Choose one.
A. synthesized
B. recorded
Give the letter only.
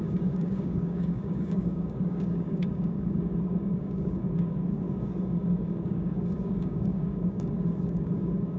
A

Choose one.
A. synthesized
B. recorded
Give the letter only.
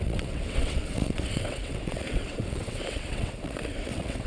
A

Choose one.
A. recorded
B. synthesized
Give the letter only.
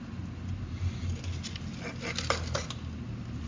A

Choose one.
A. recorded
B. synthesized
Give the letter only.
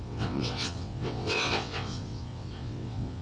B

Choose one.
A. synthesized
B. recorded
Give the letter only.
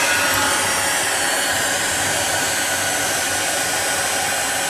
B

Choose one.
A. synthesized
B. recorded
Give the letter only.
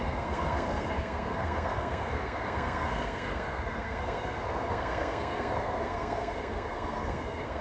A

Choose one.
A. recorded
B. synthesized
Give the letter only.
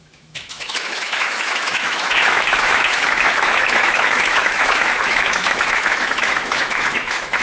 B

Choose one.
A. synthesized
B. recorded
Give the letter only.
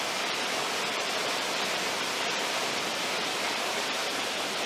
A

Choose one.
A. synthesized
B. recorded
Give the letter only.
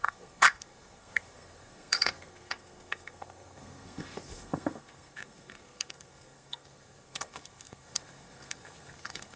A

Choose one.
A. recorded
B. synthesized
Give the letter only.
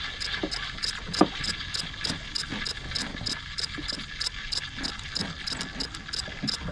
A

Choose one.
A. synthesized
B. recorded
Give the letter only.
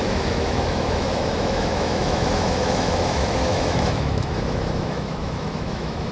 A